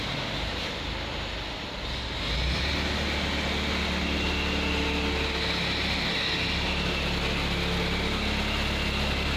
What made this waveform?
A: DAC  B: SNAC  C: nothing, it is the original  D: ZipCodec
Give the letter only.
C